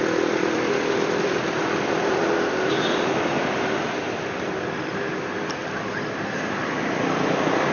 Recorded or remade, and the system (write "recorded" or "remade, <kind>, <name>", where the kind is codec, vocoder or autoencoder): remade, vocoder, BigVGAN v2